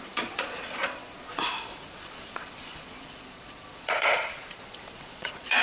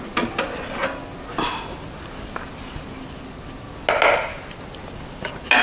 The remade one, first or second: first